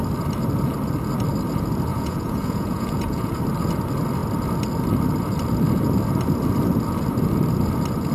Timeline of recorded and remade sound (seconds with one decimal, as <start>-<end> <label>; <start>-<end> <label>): 0.0-1.9 recorded; 1.9-3.4 remade; 3.4-8.1 recorded